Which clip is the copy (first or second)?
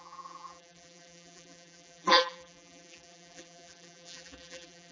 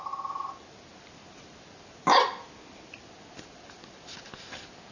first